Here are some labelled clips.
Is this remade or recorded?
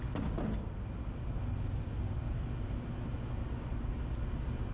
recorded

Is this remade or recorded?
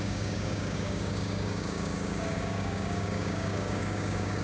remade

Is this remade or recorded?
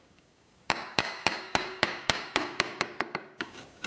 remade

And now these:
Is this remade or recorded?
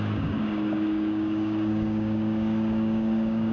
remade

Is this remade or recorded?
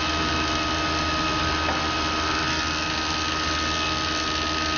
recorded